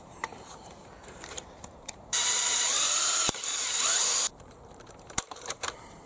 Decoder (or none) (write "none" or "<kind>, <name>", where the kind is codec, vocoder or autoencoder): vocoder, BigVGAN v2